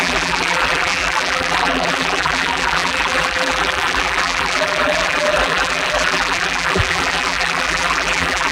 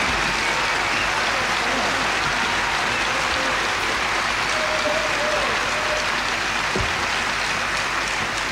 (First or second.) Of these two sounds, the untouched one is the second